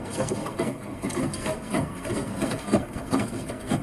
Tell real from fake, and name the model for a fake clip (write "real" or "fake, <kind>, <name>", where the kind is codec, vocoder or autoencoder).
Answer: fake, codec, SNAC